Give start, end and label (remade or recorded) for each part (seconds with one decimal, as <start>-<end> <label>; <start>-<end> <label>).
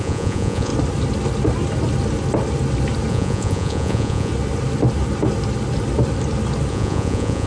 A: 0.0-0.7 remade; 0.7-3.1 recorded; 3.1-4.3 remade; 4.3-6.7 recorded; 6.7-7.5 remade